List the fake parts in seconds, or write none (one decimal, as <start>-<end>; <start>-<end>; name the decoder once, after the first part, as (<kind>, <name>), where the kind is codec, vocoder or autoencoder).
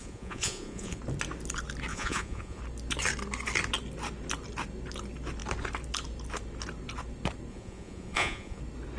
0.0-1.0 (vocoder, Vocos); 1.9-2.6; 7.5-8.6